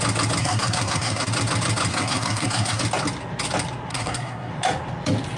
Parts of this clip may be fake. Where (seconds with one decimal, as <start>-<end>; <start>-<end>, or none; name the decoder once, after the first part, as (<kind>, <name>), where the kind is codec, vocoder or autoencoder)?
0.4-1.2 (codec, SNAC); 1.9-2.8; 3.9-4.5